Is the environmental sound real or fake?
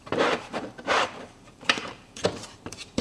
fake